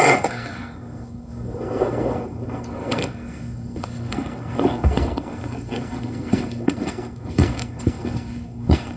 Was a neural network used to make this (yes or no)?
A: yes